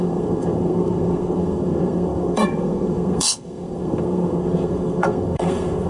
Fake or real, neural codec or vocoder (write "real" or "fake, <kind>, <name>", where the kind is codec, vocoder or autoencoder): fake, codec, SNAC